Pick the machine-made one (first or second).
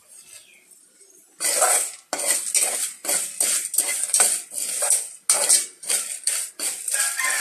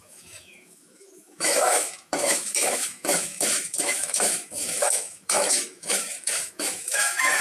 second